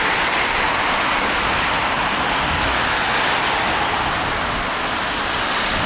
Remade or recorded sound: recorded